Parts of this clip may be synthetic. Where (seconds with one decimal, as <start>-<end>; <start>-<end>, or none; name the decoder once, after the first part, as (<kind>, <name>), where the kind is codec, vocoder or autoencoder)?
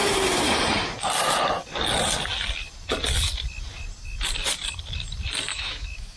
5.5-6.2 (autoencoder, DAC-VAE)